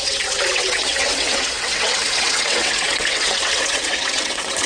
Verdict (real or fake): fake